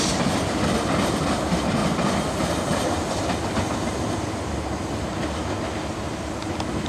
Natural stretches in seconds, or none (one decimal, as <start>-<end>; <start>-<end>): 0.0-6.9